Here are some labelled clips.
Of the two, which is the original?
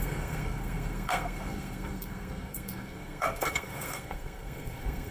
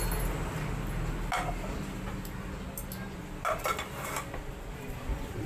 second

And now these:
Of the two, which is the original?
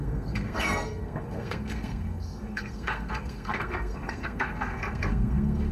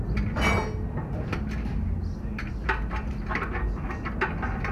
second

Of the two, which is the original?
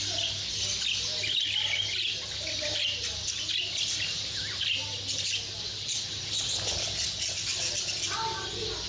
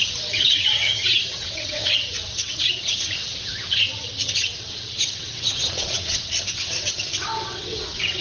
first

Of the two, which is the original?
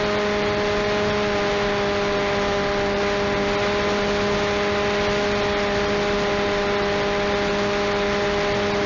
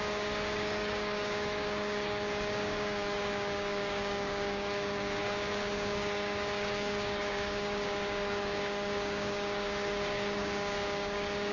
first